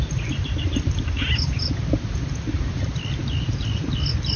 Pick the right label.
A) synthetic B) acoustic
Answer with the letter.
B